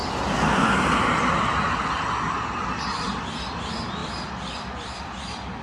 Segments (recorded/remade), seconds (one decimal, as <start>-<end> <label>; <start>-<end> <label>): 0.0-4.0 recorded; 4.0-5.0 remade; 5.0-5.6 recorded